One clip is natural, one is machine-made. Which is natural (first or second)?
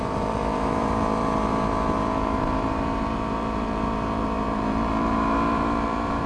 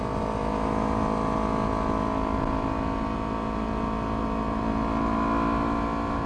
second